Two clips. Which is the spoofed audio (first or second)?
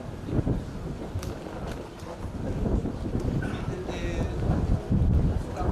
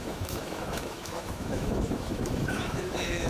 second